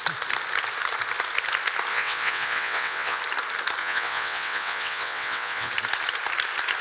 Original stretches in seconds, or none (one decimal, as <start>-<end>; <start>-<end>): 0.0-1.9; 3.2-3.8; 5.7-6.8

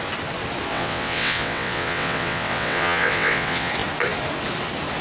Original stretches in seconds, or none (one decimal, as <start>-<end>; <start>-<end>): 0.0-0.7; 3.7-5.0